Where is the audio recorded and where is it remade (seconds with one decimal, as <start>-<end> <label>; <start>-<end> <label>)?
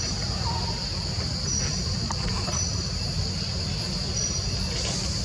0.0-5.2 recorded